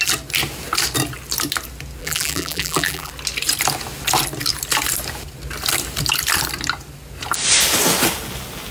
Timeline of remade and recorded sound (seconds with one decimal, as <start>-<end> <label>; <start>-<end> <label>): 0.0-2.0 recorded; 2.0-3.1 remade; 3.1-8.7 recorded